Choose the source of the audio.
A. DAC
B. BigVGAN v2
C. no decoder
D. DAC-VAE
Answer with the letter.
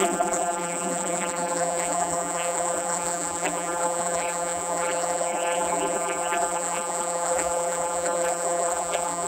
B